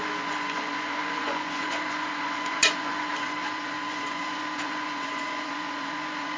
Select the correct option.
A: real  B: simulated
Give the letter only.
B